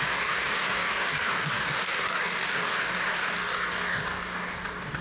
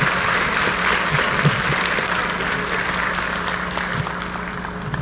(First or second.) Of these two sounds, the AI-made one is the first